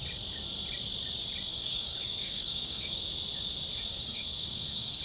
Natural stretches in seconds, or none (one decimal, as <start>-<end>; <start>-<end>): 0.0-1.5; 3.0-3.9